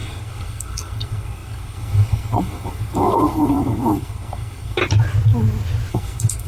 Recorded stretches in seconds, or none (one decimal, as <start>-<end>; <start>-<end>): 4.8-5.9